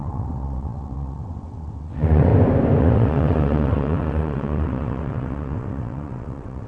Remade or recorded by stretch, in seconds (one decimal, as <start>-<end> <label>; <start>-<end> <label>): 0.0-2.3 remade; 2.3-2.8 recorded; 2.8-6.7 remade